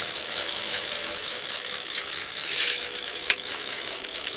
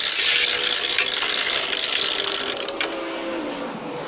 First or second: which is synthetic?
first